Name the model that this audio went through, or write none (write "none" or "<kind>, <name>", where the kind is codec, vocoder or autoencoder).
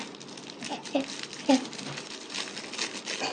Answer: none